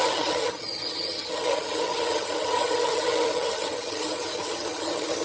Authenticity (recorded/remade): remade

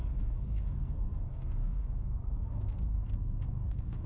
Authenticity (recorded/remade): remade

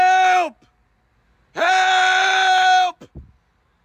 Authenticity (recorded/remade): recorded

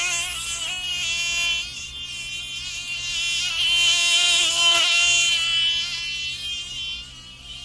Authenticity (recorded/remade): recorded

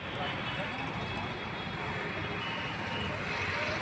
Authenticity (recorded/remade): recorded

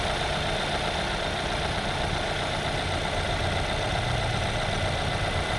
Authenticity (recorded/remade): recorded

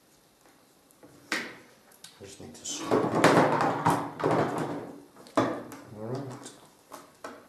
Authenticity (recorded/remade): recorded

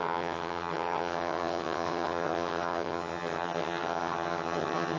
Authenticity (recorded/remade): remade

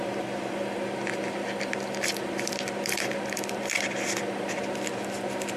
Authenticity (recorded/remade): remade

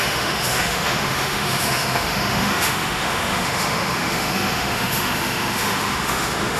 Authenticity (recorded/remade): remade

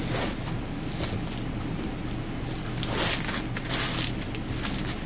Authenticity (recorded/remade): recorded